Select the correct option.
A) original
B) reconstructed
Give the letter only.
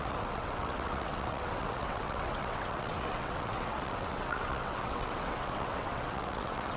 B